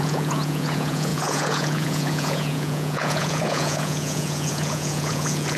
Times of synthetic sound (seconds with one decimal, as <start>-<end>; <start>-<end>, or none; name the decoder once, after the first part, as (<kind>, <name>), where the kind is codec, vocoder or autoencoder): 0.0-5.6 (vocoder, Vocos)